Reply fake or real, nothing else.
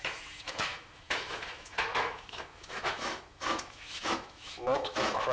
fake